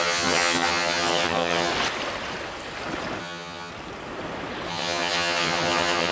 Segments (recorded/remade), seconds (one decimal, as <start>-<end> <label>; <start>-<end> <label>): 0.0-1.7 remade; 1.7-3.2 recorded; 3.2-3.7 remade; 3.7-4.7 recorded; 4.7-6.1 remade